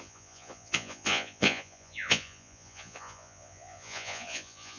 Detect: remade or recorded remade